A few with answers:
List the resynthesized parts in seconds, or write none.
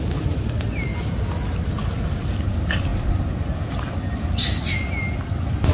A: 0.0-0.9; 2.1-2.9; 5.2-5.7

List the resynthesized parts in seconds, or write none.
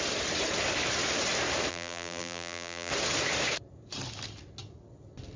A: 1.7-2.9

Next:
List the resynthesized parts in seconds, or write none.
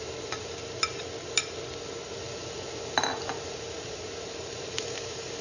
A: 0.0-0.6; 3.8-5.4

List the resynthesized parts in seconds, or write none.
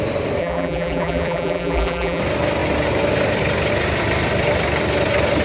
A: 0.4-2.2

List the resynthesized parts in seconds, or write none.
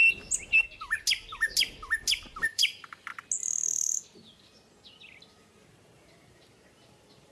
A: 2.4-3.1; 5.3-7.3